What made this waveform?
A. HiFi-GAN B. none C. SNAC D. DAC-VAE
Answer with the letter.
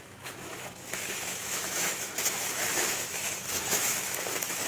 D